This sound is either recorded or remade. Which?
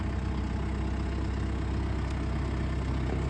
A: recorded